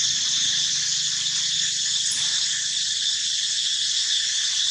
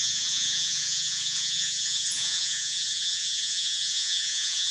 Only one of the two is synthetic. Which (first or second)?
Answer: second